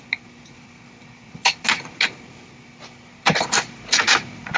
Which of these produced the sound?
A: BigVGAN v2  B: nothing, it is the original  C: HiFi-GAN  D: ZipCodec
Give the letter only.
B